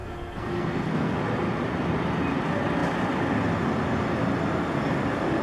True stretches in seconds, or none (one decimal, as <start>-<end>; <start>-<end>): 1.2-5.4